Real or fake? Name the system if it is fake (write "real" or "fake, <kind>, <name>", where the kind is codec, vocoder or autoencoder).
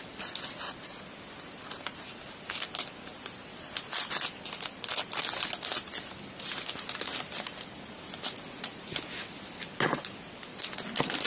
real